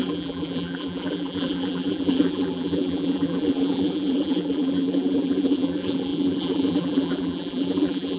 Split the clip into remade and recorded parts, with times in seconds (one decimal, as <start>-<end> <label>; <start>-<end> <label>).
0.0-8.2 remade